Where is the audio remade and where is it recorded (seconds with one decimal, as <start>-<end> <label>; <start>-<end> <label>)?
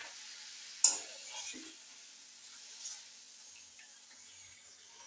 0.0-5.1 recorded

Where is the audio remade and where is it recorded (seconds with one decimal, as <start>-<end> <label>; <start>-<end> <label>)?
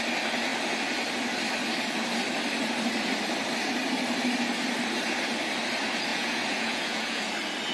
0.0-6.1 recorded; 6.1-7.3 remade; 7.3-7.7 recorded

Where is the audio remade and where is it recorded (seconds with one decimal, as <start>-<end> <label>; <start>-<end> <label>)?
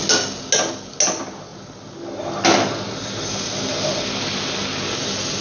0.0-5.4 recorded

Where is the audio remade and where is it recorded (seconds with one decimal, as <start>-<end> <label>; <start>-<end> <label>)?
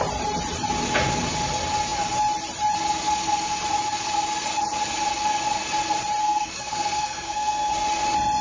0.0-6.2 recorded; 6.2-7.7 remade; 7.7-8.4 recorded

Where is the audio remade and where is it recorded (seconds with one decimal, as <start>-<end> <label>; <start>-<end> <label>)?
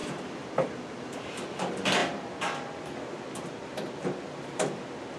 0.0-5.2 remade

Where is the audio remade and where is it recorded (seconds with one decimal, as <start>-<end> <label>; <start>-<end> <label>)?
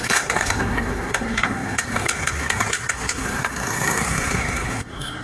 0.0-5.2 remade